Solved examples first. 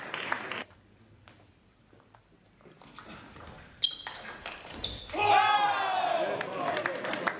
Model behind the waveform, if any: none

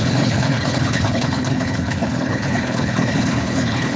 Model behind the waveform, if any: codec, HILCodec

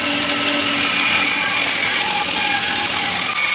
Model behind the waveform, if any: none